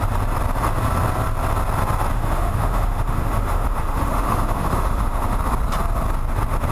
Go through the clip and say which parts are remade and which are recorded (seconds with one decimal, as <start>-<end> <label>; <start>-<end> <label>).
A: 0.0-2.1 recorded; 2.1-5.4 remade; 5.4-6.7 recorded

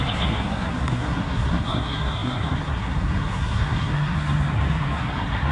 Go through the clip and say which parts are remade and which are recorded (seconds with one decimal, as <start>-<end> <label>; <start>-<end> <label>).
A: 0.0-5.5 remade

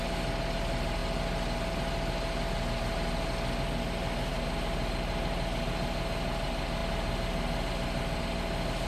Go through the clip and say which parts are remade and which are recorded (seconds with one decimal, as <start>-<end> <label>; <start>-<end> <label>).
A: 0.0-8.9 recorded

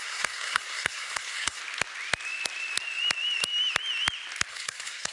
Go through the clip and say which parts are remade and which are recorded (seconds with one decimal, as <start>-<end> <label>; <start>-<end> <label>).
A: 0.0-1.6 remade; 1.6-4.5 recorded; 4.5-5.1 remade

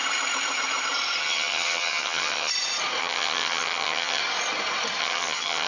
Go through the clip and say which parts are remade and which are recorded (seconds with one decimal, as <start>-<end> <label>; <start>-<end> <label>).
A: 0.0-1.2 recorded; 1.2-2.5 remade; 2.5-3.0 recorded; 3.0-4.2 remade; 4.2-5.0 recorded; 5.0-5.7 remade

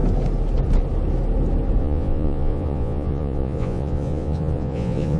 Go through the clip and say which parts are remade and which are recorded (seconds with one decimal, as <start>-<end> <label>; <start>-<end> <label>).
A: 0.0-1.8 recorded; 1.8-5.2 remade

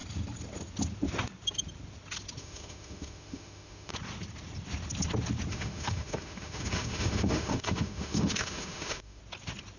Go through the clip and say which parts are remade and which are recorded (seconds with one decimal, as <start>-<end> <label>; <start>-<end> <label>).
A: 0.0-2.4 recorded; 2.4-3.9 remade; 3.9-5.5 recorded; 5.5-9.2 remade; 9.2-9.8 recorded